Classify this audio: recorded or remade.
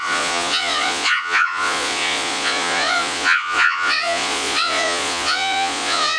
remade